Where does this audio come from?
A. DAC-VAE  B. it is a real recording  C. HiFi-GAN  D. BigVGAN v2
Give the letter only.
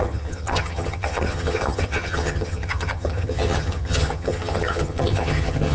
C